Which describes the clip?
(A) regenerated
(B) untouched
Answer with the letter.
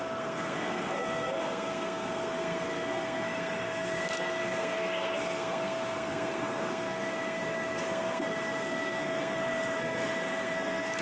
A